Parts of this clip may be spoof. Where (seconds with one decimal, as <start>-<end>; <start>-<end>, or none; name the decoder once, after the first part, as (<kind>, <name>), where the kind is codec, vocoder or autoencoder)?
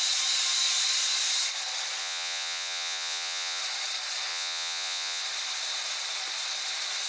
2.0-3.6 (vocoder, Vocos); 4.3-5.2